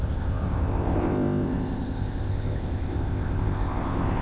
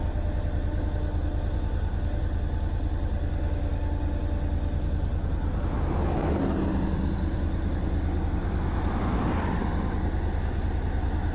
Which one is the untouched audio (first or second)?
second